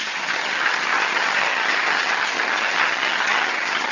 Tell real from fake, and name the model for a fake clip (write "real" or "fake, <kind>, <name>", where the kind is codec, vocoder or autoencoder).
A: fake, vocoder, HiFi-GAN